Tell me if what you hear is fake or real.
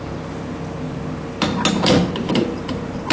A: real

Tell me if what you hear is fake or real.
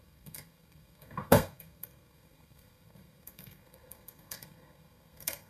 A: fake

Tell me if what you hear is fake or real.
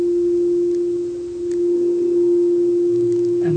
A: real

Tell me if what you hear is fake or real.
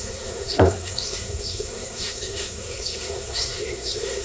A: fake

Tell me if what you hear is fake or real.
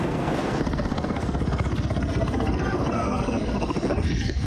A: fake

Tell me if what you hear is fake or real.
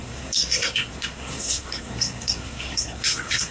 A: fake